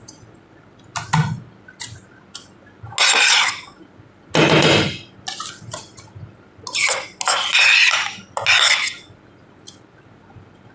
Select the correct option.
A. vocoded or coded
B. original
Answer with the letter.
B